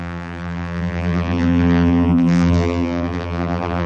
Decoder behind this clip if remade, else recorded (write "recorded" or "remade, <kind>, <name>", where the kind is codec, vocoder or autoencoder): remade, vocoder, BigVGAN v2